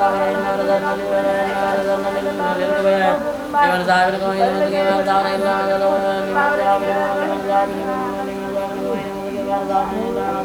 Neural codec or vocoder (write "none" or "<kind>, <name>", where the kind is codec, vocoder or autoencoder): none